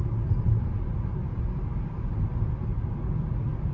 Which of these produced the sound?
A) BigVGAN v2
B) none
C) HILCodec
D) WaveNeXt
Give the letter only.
B